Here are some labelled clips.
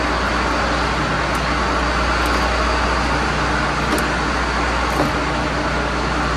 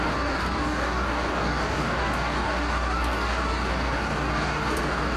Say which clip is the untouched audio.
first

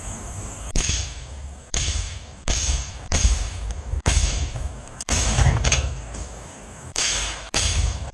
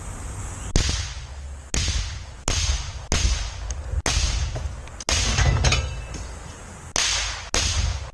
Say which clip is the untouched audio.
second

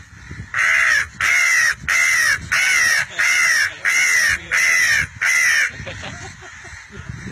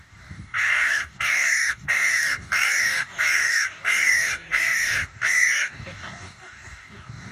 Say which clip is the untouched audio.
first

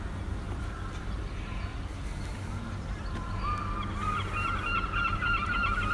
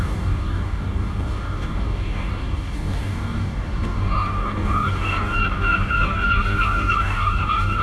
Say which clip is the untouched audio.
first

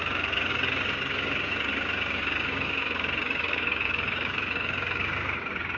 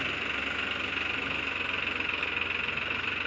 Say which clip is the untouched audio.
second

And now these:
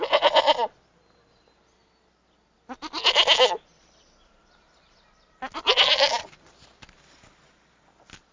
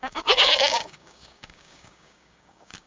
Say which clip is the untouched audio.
first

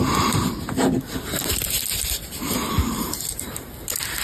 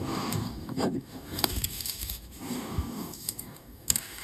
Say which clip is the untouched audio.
first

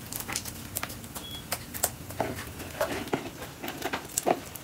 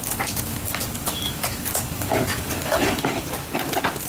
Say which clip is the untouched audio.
first